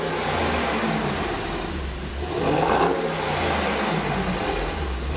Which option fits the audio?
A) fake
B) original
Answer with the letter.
B